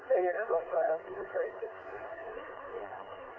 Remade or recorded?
remade